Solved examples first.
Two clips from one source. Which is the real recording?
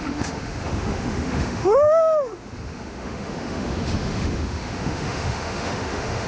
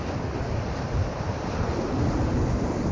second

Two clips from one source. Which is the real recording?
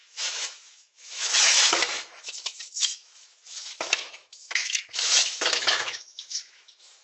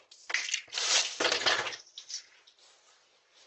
second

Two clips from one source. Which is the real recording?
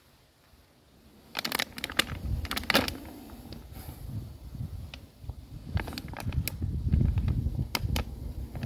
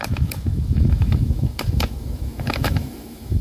first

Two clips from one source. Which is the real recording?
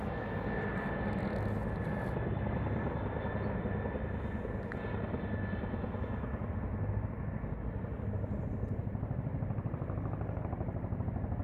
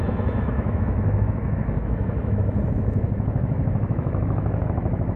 first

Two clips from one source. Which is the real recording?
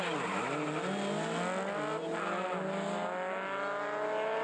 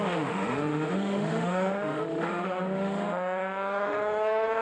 first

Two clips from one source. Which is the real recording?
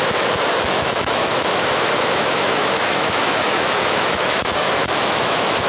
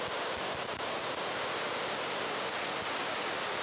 second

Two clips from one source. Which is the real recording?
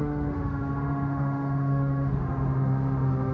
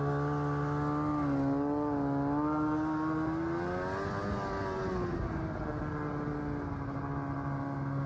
second